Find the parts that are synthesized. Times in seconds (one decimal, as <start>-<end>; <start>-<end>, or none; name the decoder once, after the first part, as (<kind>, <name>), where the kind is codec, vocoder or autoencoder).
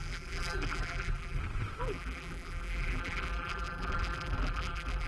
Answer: 0.0-1.4 (vocoder, BigVGAN v2); 1.8-5.1